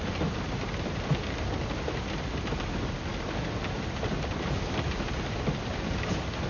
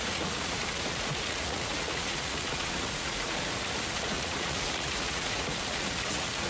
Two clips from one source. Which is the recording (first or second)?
first